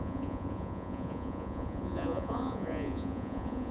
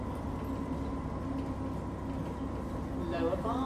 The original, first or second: second